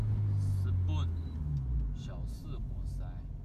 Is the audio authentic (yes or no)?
yes